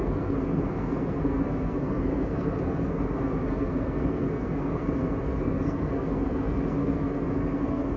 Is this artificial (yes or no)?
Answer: yes